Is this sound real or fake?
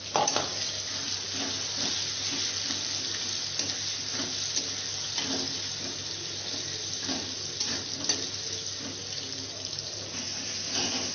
real